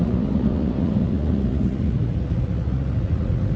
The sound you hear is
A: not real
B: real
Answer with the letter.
A